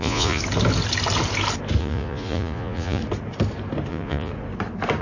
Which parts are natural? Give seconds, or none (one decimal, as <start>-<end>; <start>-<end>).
0.4-1.8; 3.0-3.9; 4.3-5.0